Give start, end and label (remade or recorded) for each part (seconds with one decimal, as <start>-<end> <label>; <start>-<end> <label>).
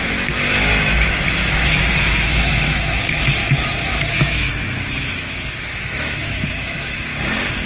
0.0-7.1 remade; 7.1-7.7 recorded